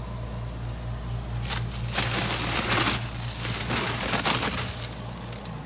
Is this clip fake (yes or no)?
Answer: no